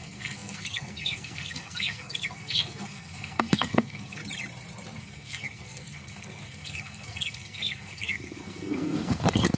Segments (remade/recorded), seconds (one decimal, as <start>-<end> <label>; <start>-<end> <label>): 0.0-4.2 remade; 4.2-5.0 recorded; 5.0-9.6 remade